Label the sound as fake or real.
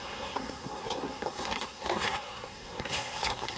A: fake